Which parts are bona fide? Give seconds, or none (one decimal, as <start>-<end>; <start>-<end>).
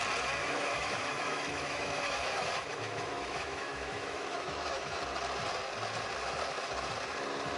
0.0-0.4; 5.0-7.6